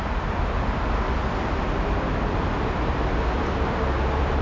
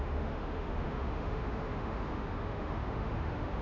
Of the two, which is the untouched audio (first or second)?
first